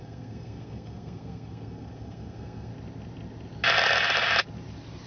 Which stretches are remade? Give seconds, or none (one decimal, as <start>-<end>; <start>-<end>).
0.0-2.7